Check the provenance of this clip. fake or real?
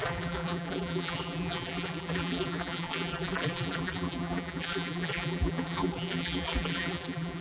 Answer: fake